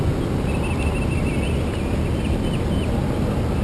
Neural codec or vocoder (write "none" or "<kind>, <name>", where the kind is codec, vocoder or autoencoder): none